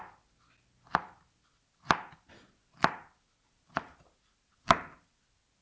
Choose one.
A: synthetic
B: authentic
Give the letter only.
B